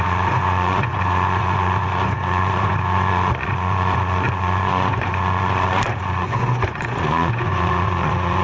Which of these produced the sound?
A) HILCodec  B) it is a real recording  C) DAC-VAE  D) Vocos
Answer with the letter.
D